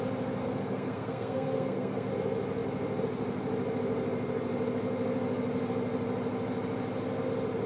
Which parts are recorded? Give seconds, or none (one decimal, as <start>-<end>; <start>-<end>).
0.0-0.4; 2.1-7.7